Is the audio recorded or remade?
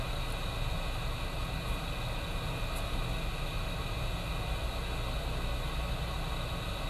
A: recorded